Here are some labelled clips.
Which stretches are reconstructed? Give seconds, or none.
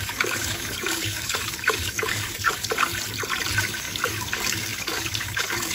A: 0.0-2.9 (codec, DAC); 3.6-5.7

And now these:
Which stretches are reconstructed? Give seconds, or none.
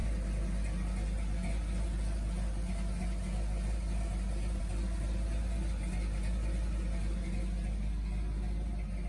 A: none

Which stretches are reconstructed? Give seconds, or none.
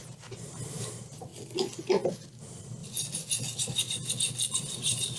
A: 0.0-1.3 (vocoder, BigVGAN v2); 2.4-2.8; 3.6-4.0; 4.6-5.2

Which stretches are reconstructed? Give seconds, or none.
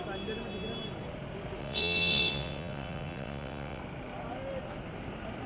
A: 1.6-3.8 (vocoder, WaveNeXt)